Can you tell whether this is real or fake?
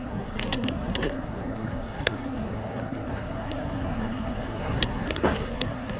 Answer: fake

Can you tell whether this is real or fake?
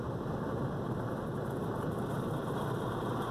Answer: fake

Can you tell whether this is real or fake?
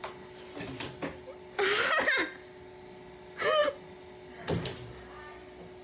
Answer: real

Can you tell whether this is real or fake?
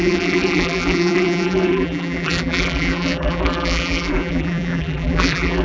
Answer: fake